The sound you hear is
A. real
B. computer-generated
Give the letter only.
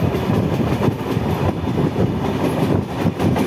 B